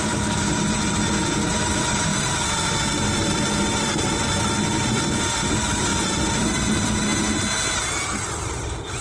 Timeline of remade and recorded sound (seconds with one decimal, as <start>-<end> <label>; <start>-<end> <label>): 0.0-2.1 recorded; 2.1-4.5 remade; 4.5-5.9 recorded; 5.9-6.6 remade; 6.6-9.0 recorded